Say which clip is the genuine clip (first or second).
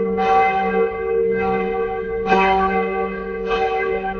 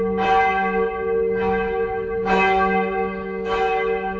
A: second